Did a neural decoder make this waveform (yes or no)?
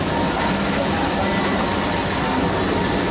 no